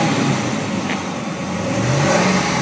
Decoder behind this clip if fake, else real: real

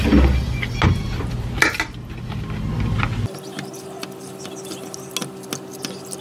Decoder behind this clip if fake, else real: real